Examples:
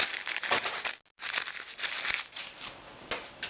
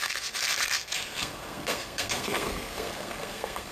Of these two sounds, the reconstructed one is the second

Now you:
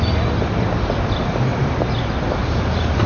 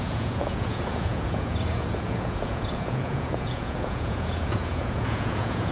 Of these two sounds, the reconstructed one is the second